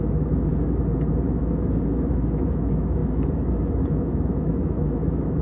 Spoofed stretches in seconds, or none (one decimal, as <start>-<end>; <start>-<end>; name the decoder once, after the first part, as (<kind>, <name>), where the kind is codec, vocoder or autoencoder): 0.0-0.5 (autoencoder, DAC-VAE); 1.4-5.4